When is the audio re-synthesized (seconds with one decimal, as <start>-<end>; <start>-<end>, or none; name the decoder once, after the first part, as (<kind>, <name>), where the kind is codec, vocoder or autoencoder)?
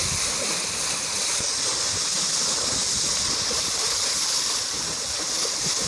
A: none